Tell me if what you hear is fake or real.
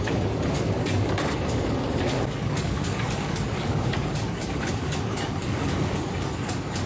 fake